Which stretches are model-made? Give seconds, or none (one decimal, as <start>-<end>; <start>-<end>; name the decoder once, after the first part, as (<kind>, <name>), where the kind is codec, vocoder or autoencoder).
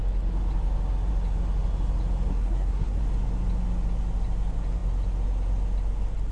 2.3-3.0 (codec, SNAC)